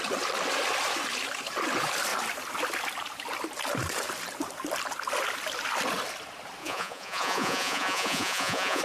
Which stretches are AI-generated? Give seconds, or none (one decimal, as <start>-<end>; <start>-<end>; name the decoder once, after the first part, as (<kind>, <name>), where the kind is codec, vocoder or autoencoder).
6.6-8.8 (vocoder, Vocos)